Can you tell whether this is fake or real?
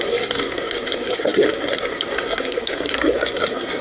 fake